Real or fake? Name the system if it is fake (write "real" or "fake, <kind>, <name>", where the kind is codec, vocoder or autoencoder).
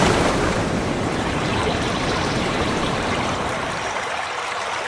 fake, vocoder, BigVGAN v2